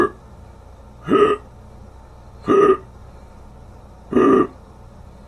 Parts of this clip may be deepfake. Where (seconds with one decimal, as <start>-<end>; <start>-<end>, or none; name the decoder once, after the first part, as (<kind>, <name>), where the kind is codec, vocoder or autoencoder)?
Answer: 3.0-5.3 (vocoder, BigVGAN v2)